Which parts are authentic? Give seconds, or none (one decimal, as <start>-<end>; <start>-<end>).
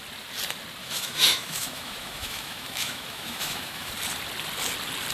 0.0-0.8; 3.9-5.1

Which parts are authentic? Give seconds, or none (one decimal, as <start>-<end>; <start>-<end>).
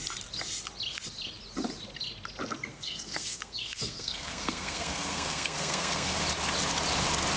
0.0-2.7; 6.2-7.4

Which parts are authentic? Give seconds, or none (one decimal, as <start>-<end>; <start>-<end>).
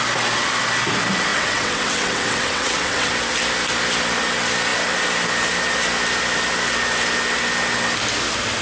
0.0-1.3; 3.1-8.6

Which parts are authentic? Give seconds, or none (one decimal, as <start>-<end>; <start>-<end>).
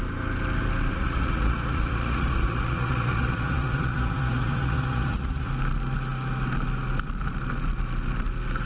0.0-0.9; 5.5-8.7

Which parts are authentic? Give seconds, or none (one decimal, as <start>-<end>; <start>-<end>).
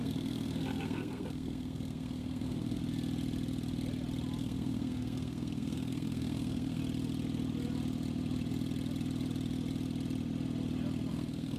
2.8-4.4; 6.8-11.1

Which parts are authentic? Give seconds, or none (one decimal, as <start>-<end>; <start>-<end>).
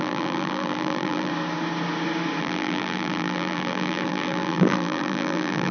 1.3-2.4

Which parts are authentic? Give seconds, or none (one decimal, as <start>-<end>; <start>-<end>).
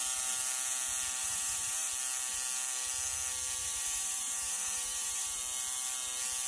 0.0-1.2; 1.9-3.6; 5.4-6.5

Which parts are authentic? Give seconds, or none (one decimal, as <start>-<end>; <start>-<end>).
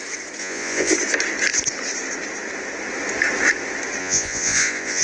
0.0-0.4; 0.9-4.0